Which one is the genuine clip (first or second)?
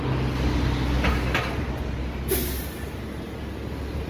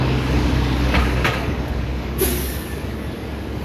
first